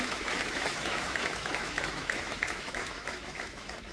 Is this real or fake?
fake